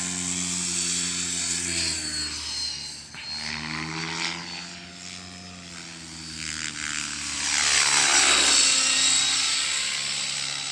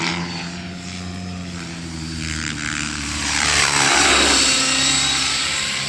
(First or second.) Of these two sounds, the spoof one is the second